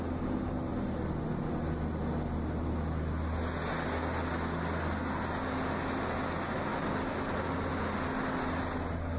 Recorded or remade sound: recorded